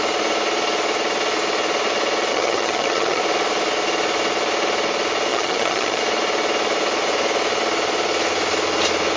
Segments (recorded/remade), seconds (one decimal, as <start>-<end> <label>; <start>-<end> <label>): 0.0-2.3 recorded; 2.3-3.2 remade; 3.2-5.3 recorded; 5.3-6.0 remade; 6.0-9.2 recorded